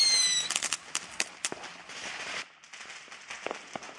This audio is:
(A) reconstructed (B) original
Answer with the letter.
B